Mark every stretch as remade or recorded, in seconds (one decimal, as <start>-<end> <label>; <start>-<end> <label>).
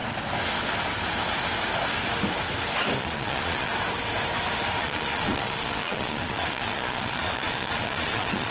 0.0-3.0 recorded; 3.0-3.7 remade; 3.7-4.8 recorded; 4.8-8.5 remade